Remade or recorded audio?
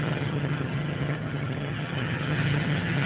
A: remade